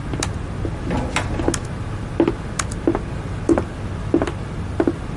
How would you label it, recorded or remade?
recorded